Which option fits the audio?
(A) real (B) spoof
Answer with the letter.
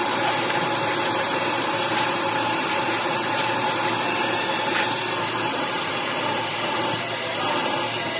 B